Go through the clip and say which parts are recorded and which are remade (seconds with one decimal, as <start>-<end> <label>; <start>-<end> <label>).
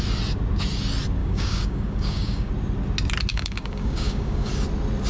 0.0-1.2 recorded; 1.2-2.5 remade; 2.5-3.3 recorded; 3.3-4.5 remade; 4.5-5.1 recorded